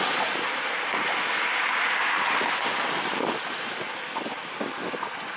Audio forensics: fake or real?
real